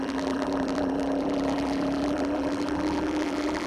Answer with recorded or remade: remade